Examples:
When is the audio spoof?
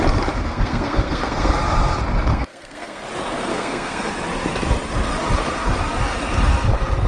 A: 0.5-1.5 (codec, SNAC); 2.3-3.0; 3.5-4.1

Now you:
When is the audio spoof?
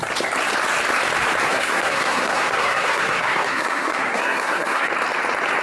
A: 1.5-4.9 (codec, SNAC)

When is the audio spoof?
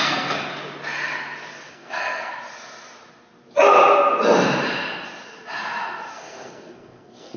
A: 0.0-0.5 (codec, SNAC); 1.7-2.3; 6.1-7.4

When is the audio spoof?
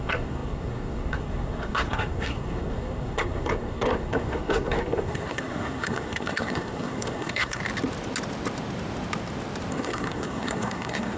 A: 0.0-7.6 (codec, SNAC); 9.7-11.2